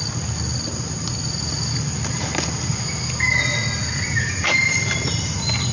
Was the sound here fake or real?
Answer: real